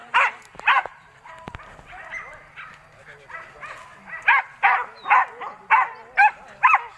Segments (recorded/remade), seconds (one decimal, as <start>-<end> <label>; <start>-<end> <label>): 0.0-1.3 remade; 1.3-7.0 recorded